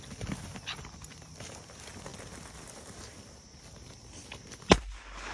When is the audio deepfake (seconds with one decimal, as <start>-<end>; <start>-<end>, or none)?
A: none